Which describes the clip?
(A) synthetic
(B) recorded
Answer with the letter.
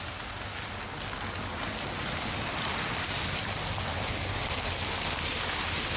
B